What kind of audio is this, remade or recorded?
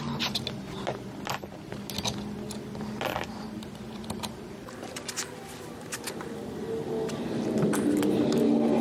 recorded